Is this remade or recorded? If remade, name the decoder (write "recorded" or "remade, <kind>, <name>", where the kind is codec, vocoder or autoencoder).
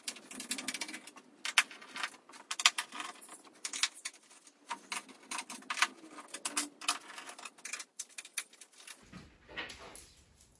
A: recorded